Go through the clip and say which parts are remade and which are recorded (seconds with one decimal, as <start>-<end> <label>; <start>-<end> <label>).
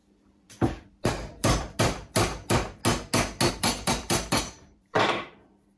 0.0-2.8 remade; 2.8-3.5 recorded; 3.5-5.8 remade